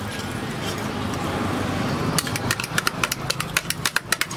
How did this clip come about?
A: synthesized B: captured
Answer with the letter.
B